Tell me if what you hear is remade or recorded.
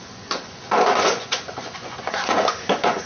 remade